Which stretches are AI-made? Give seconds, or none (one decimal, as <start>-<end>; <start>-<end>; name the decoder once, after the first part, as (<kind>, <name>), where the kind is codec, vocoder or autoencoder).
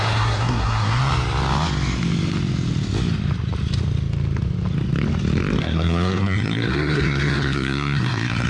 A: 0.0-1.0 (codec, SNAC); 5.6-8.5